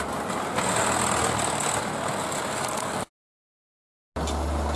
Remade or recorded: recorded